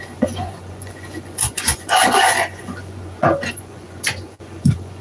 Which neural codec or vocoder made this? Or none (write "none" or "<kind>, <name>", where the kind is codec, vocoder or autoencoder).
vocoder, Vocos